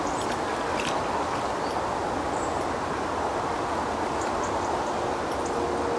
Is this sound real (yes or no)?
yes